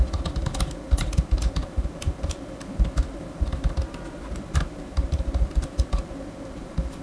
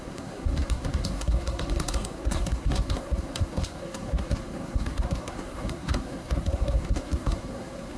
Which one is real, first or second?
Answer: first